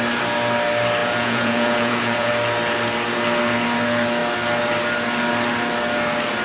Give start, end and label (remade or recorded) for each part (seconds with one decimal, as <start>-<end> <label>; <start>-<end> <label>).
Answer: 0.0-1.0 recorded; 1.0-2.3 remade; 2.3-6.4 recorded